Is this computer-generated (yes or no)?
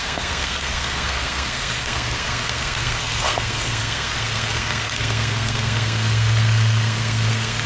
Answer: yes